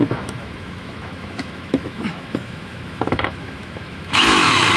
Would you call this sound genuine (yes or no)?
no